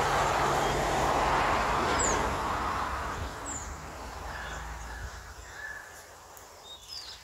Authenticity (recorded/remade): recorded